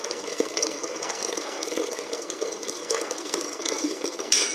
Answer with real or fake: fake